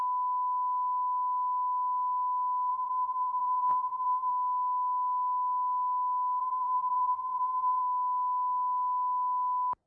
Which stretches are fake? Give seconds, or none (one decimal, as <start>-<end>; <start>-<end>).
2.7-4.3; 6.4-7.8